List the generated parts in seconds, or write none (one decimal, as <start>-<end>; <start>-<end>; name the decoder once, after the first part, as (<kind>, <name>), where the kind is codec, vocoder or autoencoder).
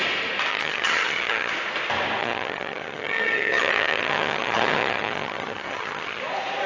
0.5-1.5 (vocoder, HiFi-GAN); 2.2-6.2